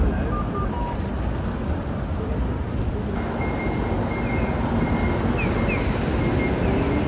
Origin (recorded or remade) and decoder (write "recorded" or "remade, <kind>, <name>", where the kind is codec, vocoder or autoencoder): recorded